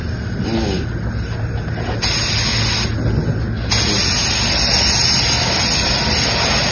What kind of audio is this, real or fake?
real